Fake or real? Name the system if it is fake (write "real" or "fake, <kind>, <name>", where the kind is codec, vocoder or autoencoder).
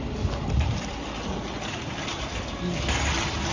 real